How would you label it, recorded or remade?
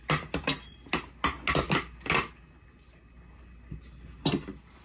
recorded